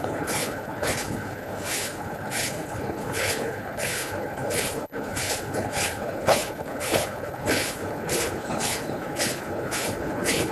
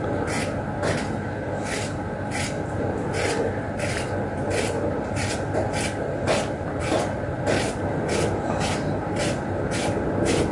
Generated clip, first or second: first